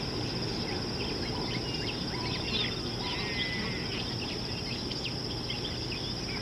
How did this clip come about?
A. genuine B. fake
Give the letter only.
A